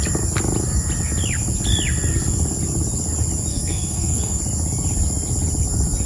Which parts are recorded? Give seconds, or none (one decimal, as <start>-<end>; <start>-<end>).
0.0-3.5; 4.4-6.1